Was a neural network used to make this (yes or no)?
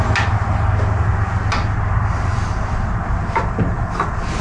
no